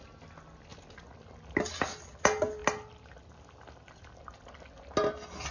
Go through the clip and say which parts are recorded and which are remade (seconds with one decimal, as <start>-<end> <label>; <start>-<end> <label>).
0.0-5.5 recorded